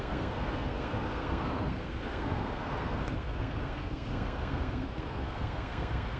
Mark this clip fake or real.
fake